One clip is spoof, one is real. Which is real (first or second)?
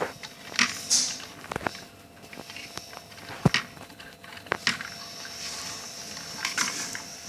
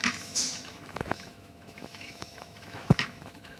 first